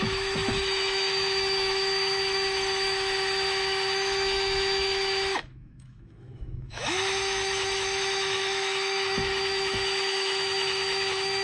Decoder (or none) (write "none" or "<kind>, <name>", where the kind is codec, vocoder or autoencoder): autoencoder, DAC-VAE